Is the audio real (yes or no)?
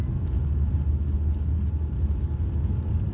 yes